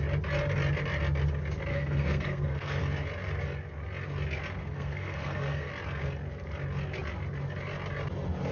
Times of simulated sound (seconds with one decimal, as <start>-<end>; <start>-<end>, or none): 1.7-2.8; 4.6-5.7